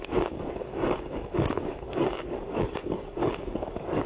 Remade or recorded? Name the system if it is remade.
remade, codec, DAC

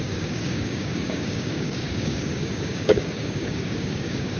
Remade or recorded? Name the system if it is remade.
remade, codec, DAC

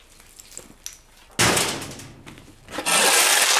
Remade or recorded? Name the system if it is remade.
recorded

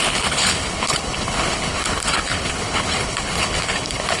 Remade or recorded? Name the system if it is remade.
remade, codec, HILCodec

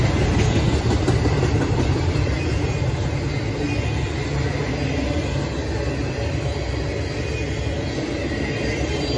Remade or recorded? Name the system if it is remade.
recorded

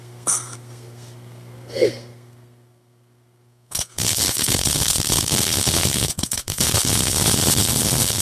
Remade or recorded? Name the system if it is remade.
remade, codec, SNAC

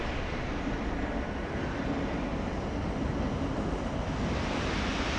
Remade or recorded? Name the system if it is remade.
recorded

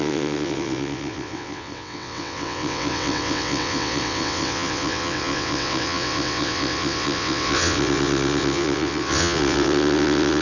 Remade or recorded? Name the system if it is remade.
remade, vocoder, WaveNeXt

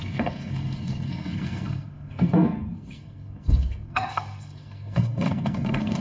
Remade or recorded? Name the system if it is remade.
remade, codec, SNAC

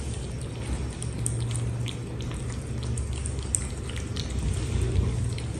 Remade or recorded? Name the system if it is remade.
recorded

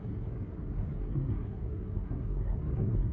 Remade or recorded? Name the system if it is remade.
remade, codec, SNAC